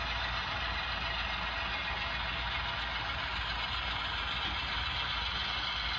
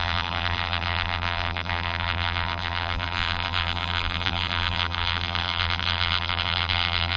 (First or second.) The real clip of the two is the first